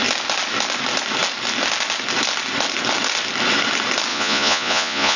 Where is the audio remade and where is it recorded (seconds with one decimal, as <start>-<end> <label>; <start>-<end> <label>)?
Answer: 0.0-4.1 recorded; 4.1-5.2 remade